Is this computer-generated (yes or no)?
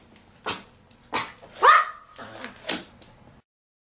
no